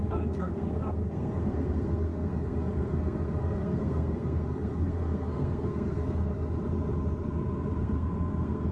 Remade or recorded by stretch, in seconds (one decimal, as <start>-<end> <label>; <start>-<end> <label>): 0.0-6.3 remade; 6.3-7.8 recorded; 7.8-8.7 remade